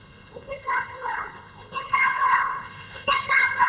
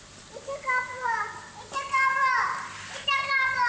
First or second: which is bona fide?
second